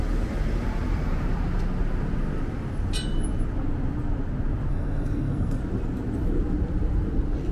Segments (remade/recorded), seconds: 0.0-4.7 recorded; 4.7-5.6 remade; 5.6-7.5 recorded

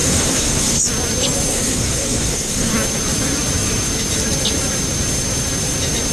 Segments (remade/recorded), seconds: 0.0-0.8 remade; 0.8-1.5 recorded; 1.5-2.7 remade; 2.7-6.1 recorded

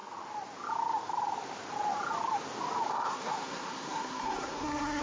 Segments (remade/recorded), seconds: 0.0-2.9 recorded; 2.9-5.0 remade

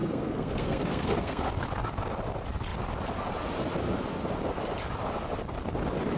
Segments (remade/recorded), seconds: 0.0-1.5 remade; 1.5-6.2 recorded

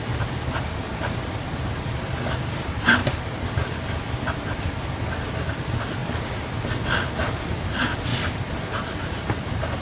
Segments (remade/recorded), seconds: 0.0-9.8 recorded

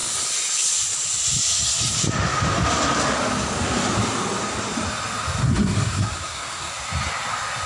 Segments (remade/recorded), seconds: 0.0-5.4 recorded; 5.4-6.7 remade; 6.7-7.7 recorded

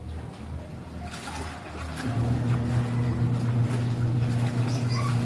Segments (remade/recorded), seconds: 0.0-5.2 recorded